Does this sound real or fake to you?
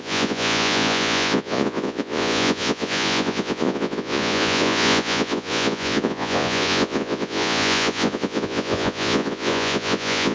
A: fake